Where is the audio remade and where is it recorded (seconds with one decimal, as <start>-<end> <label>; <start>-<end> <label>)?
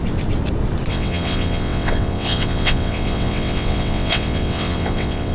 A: 0.0-0.9 recorded; 0.9-5.3 remade